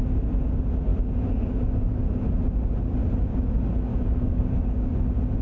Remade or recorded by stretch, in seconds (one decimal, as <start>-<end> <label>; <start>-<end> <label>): 0.0-3.9 recorded; 3.9-4.9 remade; 4.9-5.4 recorded